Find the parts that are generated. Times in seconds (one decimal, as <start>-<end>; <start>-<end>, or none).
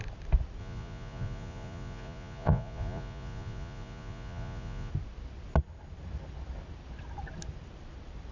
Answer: 0.6-4.9